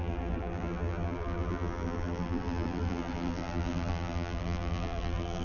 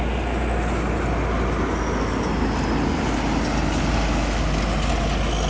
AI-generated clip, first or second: first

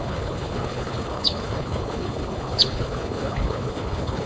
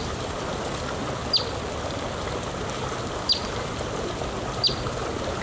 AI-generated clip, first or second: first